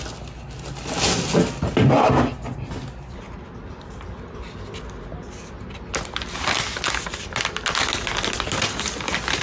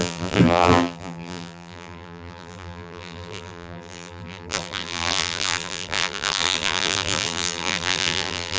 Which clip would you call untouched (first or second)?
first